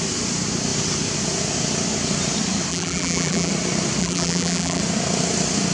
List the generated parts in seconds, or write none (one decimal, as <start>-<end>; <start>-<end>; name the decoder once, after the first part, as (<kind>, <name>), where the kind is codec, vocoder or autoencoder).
2.7-3.5 (vocoder, BigVGAN v2); 4.0-4.8